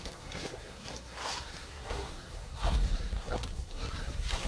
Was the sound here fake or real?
fake